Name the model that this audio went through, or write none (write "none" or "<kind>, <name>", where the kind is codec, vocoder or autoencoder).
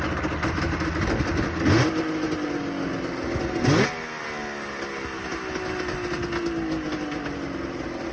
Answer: none